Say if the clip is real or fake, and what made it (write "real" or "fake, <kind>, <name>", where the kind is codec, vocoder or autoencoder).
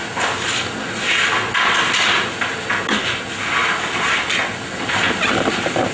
real